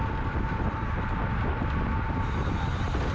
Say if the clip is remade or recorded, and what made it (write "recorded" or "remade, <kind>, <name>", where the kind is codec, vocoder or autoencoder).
recorded